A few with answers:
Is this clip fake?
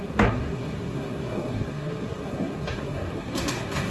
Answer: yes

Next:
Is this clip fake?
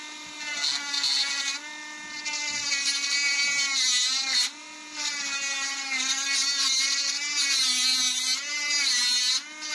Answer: no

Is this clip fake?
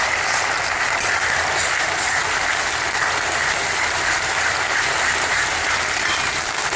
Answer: yes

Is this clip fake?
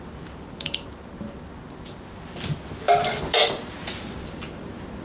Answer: no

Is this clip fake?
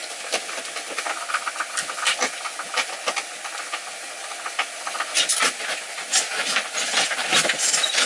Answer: no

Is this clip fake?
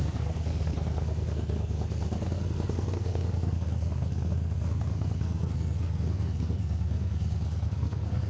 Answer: yes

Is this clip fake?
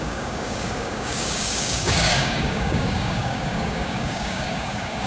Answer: yes